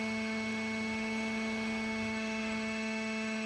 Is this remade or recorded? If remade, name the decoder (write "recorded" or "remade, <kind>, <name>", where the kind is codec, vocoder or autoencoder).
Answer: remade, autoencoder, DAC-VAE